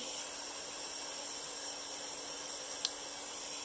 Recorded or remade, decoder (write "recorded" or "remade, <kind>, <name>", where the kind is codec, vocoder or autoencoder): recorded